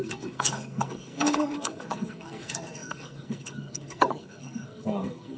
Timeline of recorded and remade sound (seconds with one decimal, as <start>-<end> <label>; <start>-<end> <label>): 0.0-5.4 remade